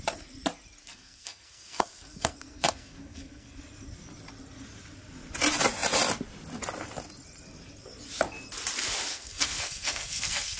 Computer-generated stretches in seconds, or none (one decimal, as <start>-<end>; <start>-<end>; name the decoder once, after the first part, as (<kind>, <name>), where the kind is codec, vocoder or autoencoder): 0.8-3.6 (codec, SNAC); 9.1-10.6